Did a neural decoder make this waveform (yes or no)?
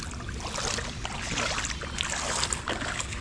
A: no